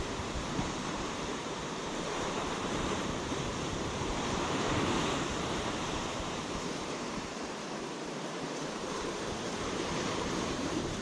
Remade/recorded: remade